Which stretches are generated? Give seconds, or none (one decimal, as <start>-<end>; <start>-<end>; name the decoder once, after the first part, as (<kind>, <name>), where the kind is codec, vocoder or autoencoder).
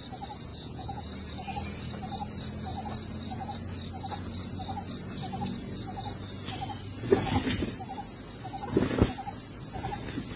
0.5-1.0 (vocoder, Vocos)